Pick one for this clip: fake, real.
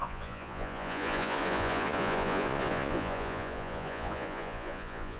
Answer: fake